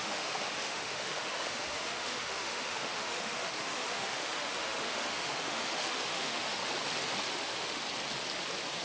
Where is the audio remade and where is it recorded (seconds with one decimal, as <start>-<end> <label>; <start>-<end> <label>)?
0.0-6.6 remade; 6.6-7.3 recorded; 7.3-7.8 remade; 7.8-8.8 recorded